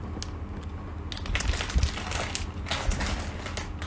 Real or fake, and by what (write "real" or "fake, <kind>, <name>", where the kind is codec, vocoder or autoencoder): real